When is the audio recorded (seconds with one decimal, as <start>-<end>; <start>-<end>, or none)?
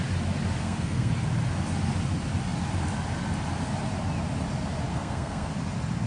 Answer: 0.0-0.6; 1.1-4.9; 5.5-6.1